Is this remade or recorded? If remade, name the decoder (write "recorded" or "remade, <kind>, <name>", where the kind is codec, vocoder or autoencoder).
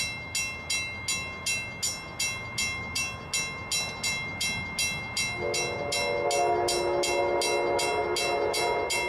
recorded